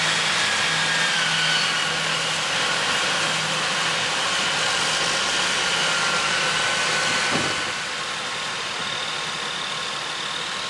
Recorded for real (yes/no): yes